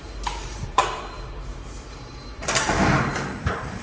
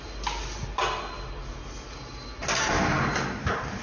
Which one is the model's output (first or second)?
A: first